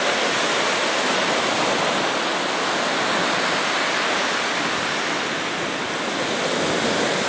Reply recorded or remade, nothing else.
recorded